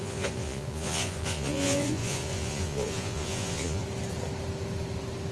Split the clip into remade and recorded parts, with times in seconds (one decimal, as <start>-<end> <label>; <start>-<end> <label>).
0.0-3.8 remade; 3.8-5.3 recorded